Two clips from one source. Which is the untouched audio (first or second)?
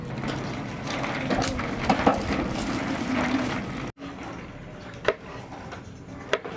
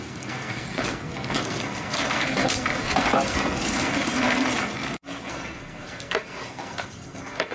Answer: first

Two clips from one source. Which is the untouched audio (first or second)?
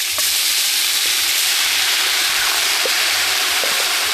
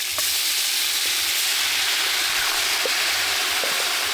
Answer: second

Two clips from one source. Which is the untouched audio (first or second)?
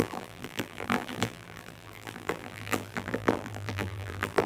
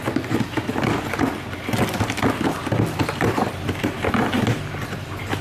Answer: second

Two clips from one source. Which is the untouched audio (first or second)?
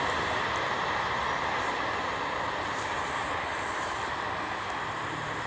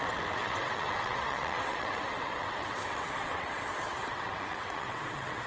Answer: first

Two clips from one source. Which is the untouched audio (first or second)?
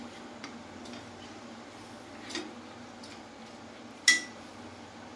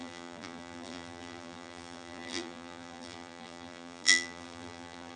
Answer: first